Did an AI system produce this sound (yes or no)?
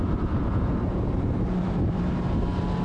yes